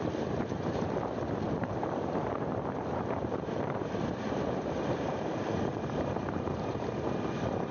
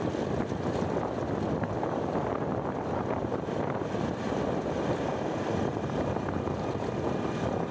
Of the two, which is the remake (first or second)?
first